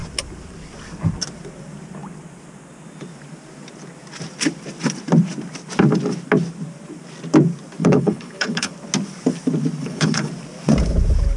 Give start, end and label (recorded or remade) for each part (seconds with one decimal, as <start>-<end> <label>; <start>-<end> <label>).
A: 0.0-7.8 recorded; 7.8-8.7 remade; 8.7-9.8 recorded; 9.8-10.3 remade; 10.3-11.4 recorded